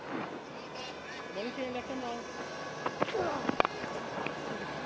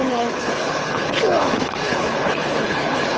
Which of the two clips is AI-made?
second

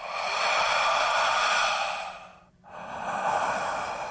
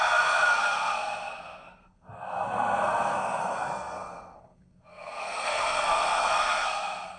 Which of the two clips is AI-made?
second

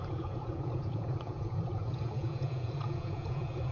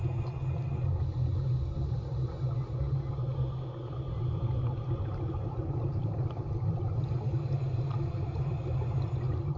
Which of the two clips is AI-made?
first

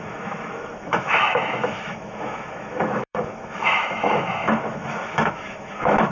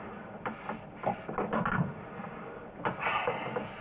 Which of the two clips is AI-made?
first